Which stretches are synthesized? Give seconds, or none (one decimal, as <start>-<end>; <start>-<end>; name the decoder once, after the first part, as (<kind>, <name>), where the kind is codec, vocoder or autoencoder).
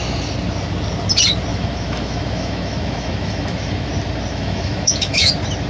1.5-3.9 (autoencoder, DAC-VAE); 4.3-5.3